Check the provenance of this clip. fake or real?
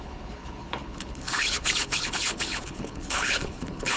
fake